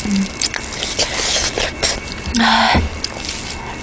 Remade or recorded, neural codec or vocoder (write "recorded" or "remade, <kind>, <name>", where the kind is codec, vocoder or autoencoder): recorded